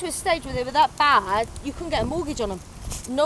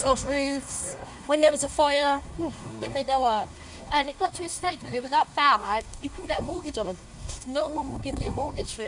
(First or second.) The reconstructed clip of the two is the second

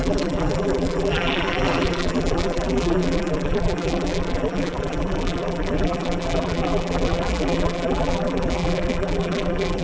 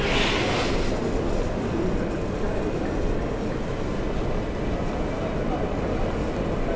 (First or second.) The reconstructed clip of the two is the first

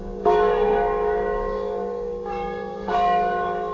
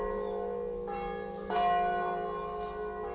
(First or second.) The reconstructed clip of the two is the first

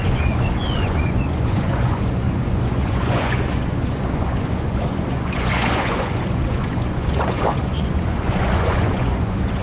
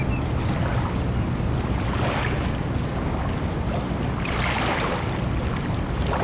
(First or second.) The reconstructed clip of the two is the first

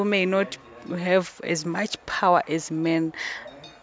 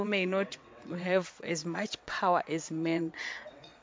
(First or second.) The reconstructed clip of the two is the second